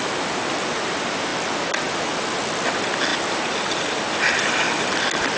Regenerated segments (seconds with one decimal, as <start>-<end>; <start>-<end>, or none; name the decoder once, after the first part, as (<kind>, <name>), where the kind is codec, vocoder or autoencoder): none